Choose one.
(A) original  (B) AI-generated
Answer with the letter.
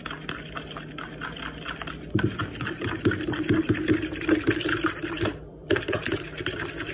A